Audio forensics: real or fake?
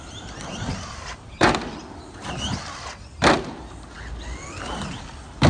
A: real